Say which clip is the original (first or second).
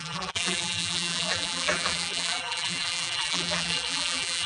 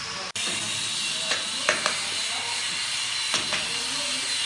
second